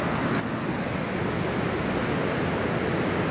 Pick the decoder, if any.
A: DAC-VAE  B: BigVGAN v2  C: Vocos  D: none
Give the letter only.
D